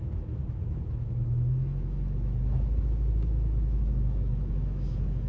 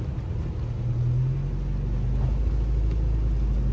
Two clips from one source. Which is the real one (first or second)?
second